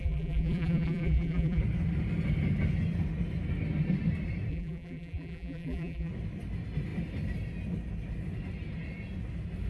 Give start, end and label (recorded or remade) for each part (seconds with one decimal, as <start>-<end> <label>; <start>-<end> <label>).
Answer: 0.0-1.6 remade; 1.6-4.5 recorded; 4.5-6.1 remade; 6.1-9.7 recorded